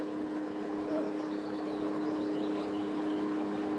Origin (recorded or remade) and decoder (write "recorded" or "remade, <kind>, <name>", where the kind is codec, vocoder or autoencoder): remade, codec, HILCodec